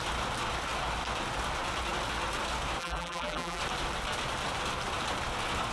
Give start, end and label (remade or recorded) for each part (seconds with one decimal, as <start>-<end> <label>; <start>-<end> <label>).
0.0-2.8 recorded; 2.8-3.6 remade; 3.6-5.7 recorded